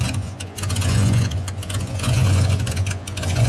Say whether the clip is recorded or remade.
remade